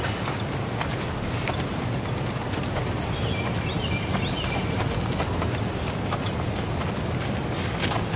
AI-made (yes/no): no